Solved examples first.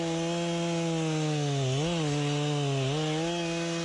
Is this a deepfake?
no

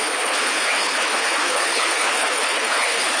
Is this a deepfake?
yes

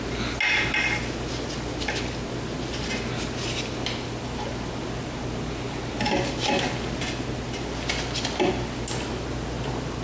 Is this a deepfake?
no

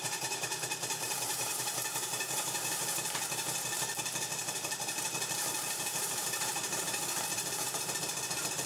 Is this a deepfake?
yes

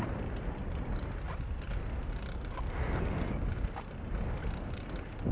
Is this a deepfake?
no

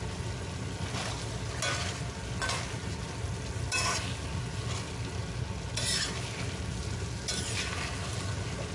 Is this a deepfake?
no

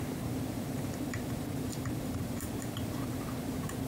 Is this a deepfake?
yes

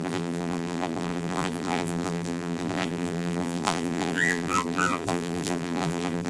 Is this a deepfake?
yes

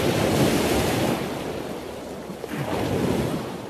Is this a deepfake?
no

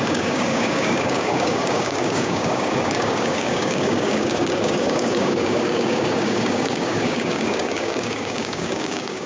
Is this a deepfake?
yes